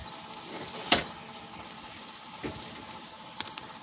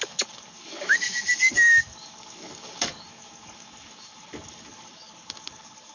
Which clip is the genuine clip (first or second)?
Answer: first